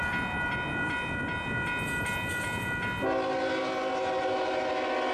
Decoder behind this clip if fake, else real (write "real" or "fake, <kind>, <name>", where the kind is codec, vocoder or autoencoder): real